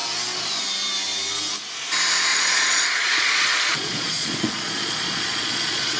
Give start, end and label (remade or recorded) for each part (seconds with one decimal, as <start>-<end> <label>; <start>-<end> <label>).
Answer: 0.0-2.3 recorded; 2.3-6.0 remade